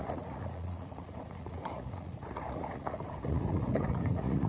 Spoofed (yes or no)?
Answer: yes